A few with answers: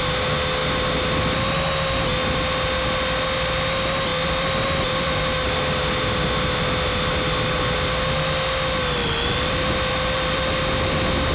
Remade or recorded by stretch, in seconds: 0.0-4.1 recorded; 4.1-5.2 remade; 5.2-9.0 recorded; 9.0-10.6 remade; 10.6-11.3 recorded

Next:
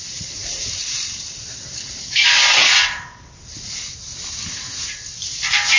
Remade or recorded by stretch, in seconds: 0.0-0.4 recorded; 0.4-1.3 remade; 1.3-5.8 recorded